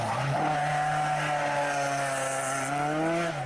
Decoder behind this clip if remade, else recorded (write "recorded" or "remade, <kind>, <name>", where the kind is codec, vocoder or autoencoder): recorded